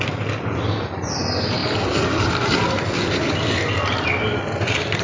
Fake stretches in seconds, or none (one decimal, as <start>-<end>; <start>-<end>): none